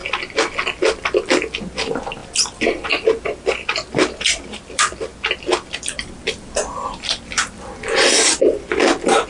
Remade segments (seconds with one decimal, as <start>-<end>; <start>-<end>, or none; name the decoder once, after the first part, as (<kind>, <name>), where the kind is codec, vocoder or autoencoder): 0.9-5.1 (vocoder, BigVGAN v2); 5.7-9.3